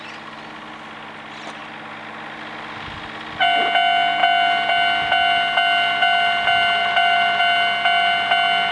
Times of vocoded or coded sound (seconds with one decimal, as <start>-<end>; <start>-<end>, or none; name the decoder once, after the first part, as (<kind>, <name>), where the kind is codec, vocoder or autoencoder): 1.6-2.8 (vocoder, BigVGAN v2); 6.8-7.4